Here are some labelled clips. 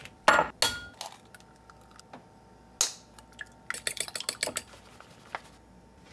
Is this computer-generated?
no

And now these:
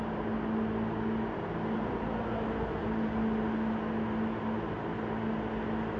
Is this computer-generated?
no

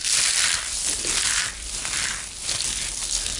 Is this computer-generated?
no